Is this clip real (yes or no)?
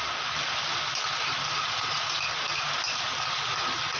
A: yes